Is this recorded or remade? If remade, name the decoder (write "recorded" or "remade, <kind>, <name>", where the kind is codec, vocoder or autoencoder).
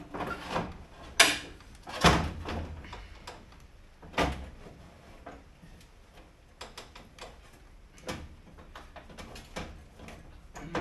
recorded